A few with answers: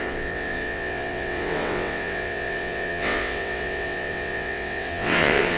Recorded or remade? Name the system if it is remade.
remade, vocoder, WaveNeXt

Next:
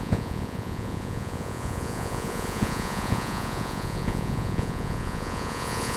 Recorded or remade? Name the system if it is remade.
remade, vocoder, Vocos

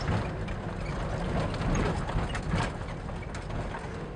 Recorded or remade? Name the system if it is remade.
recorded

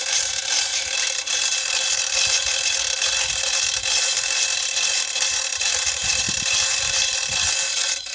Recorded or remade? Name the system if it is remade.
remade, vocoder, BigVGAN v2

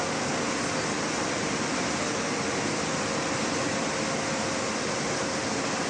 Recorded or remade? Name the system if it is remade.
recorded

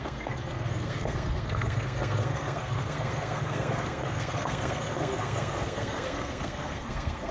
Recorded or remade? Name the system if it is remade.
remade, codec, SNAC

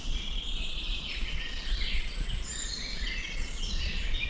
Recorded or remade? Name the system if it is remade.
remade, vocoder, Vocos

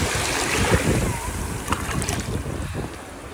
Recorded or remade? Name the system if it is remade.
recorded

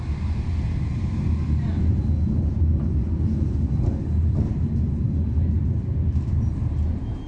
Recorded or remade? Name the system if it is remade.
recorded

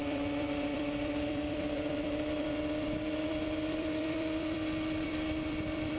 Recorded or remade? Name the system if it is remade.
remade, vocoder, BigVGAN v2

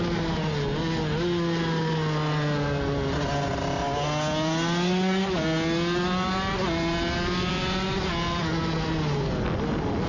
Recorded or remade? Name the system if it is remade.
recorded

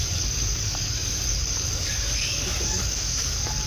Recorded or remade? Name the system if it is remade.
remade, codec, DAC